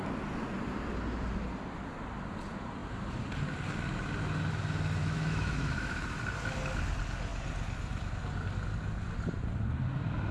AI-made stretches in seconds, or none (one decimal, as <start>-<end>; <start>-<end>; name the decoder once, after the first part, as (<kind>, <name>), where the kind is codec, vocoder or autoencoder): 5.0-6.0 (autoencoder, DAC-VAE)